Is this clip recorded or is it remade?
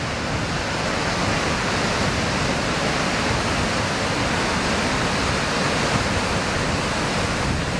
recorded